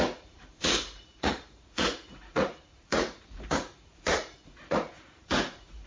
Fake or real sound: fake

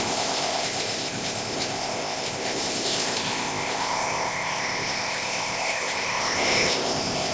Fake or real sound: fake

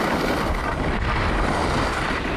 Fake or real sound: real